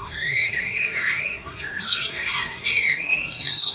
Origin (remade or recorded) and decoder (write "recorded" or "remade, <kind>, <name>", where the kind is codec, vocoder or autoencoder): remade, codec, SNAC